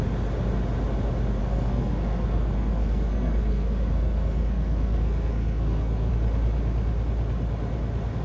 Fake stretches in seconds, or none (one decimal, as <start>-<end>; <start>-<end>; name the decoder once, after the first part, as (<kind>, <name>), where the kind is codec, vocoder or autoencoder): 1.4-6.1 (codec, SNAC)